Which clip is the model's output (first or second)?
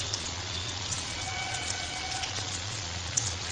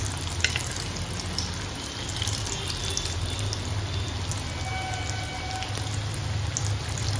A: first